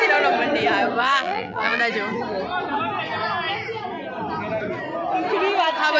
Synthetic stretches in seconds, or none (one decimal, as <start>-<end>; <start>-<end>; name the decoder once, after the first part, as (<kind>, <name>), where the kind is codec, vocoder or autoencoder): 1.0-1.8 (vocoder, BigVGAN v2)